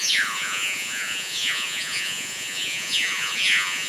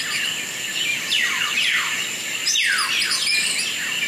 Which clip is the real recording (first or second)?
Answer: second